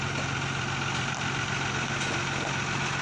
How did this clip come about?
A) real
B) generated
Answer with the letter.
A